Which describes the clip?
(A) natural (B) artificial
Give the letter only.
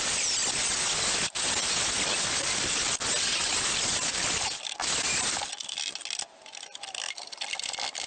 A